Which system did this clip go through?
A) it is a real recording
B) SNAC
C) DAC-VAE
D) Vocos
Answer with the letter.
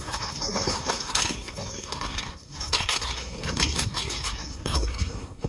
B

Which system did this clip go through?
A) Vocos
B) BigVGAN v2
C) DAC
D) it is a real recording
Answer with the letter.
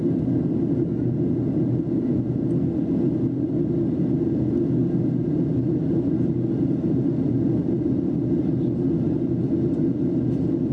D